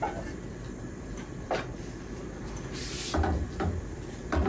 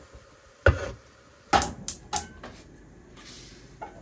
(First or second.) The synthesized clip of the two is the first